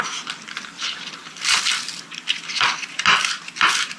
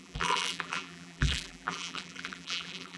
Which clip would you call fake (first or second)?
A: second